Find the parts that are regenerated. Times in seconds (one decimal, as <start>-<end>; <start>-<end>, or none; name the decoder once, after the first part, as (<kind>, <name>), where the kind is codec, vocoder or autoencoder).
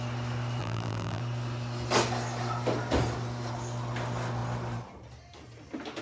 0.6-1.2 (vocoder, BigVGAN v2)